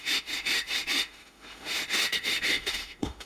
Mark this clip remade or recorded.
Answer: remade